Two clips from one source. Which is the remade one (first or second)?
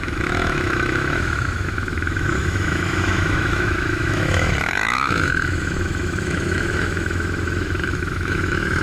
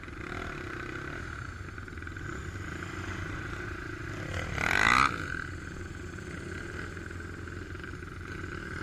first